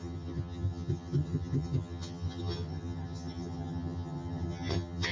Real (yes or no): no